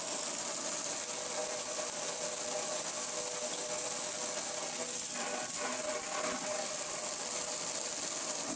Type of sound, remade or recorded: recorded